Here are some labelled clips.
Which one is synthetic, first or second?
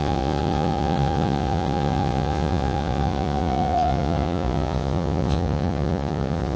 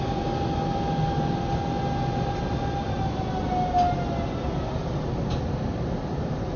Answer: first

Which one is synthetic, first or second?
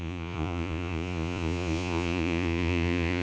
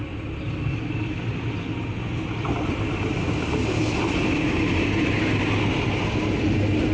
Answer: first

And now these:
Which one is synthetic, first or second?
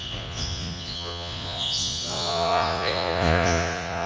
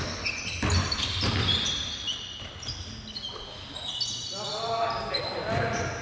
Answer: first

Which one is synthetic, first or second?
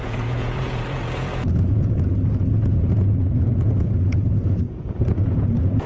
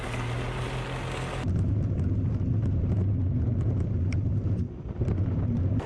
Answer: first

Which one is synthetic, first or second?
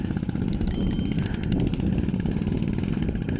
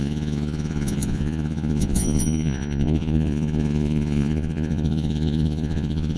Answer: second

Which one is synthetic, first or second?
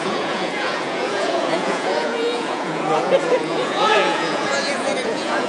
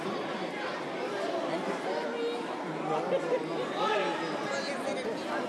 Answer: first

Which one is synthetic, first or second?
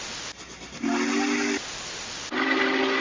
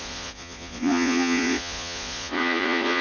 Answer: second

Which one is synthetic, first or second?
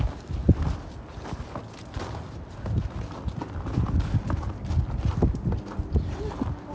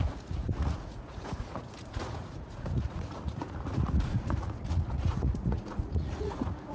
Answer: second